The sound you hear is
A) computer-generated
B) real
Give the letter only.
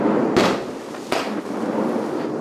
B